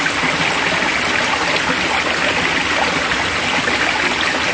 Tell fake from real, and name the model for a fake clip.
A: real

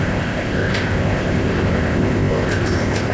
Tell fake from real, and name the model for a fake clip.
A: fake, codec, ZipCodec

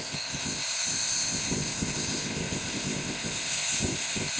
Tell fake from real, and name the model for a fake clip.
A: fake, codec, ZipCodec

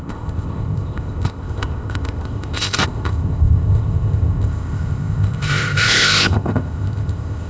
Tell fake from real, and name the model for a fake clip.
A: fake, codec, ZipCodec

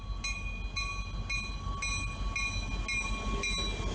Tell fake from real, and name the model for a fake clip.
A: real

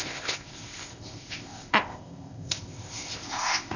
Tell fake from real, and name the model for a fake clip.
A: fake, codec, ZipCodec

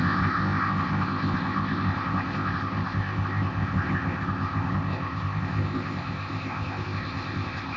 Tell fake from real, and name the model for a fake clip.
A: fake, codec, ZipCodec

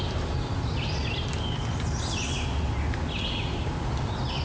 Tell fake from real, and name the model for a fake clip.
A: real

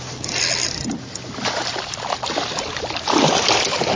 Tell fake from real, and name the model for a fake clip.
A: real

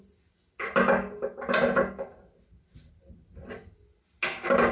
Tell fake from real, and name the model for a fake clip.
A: real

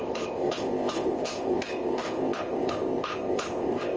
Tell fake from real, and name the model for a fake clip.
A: fake, codec, ZipCodec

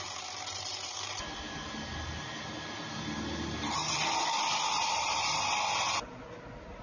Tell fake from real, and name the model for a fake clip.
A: real